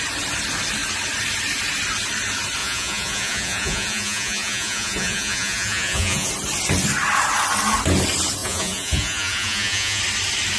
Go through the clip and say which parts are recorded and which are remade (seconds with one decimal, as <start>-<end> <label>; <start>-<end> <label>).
0.0-2.6 recorded; 2.6-6.3 remade; 6.3-8.4 recorded; 8.4-10.0 remade; 10.0-10.6 recorded